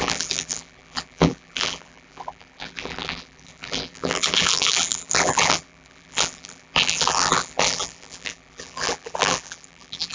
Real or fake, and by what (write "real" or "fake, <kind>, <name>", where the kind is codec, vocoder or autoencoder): fake, vocoder, BigVGAN v2